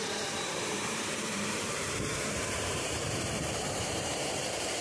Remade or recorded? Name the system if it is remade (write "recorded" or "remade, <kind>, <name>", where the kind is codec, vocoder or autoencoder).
remade, vocoder, BigVGAN v2